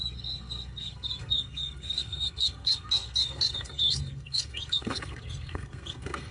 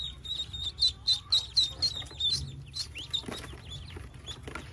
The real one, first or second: second